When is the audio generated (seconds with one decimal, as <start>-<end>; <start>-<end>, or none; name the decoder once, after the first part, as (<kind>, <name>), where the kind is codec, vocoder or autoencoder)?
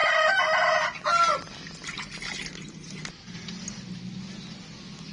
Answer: none